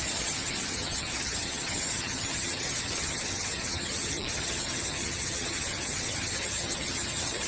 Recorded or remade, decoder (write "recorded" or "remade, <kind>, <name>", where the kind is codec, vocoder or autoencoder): remade, vocoder, HiFi-GAN